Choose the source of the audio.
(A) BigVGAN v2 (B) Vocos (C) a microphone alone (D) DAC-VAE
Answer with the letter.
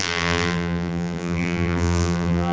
A